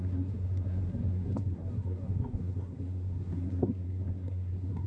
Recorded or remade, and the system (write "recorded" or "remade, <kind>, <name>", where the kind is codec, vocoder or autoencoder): remade, codec, SNAC